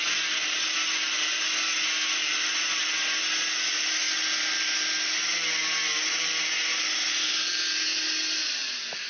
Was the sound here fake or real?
real